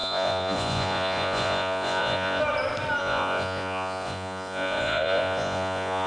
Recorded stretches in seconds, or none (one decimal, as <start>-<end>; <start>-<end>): 2.4-3.0